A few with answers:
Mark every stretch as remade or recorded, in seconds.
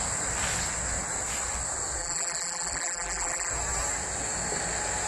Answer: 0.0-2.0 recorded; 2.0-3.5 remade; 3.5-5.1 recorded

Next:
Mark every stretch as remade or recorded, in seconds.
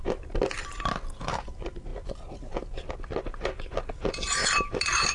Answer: 0.0-4.4 recorded; 4.4-5.1 remade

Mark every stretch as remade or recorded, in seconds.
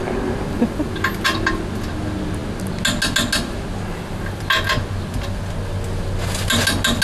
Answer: 0.0-7.0 recorded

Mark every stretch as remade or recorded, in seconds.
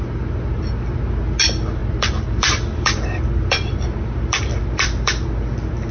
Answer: 0.0-1.8 recorded; 1.8-5.1 remade; 5.1-5.9 recorded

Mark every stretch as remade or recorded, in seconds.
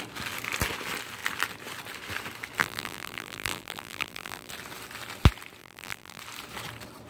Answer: 0.0-2.6 recorded; 2.6-4.5 remade; 4.5-5.6 recorded; 5.6-6.2 remade; 6.2-7.1 recorded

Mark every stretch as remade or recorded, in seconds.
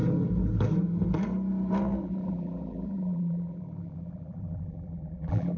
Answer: 0.0-2.0 recorded; 2.0-5.6 remade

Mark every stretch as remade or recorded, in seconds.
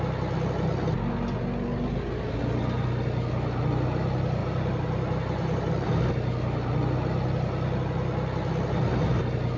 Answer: 0.0-4.4 recorded; 4.4-5.7 remade; 5.7-9.6 recorded